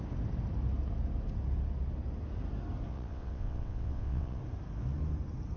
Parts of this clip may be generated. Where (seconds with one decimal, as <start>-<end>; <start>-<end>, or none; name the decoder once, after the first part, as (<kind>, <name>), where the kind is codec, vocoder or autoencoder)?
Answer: 2.9-4.4 (vocoder, WaveNeXt)